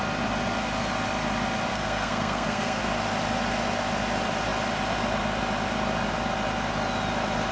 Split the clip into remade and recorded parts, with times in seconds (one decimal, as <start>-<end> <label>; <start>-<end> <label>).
0.0-1.7 recorded; 1.7-2.8 remade; 2.8-7.5 recorded